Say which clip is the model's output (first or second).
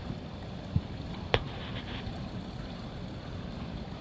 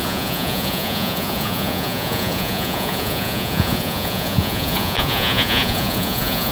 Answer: second